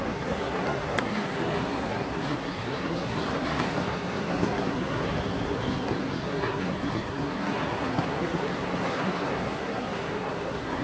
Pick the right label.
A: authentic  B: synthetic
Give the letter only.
B